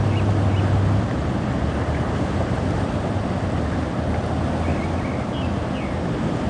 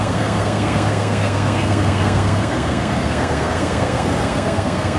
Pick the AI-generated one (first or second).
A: second